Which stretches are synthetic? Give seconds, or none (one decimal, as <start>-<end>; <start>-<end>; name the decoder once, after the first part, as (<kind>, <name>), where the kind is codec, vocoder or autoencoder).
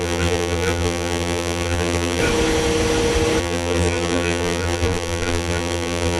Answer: 0.0-2.2 (vocoder, BigVGAN v2); 3.4-6.2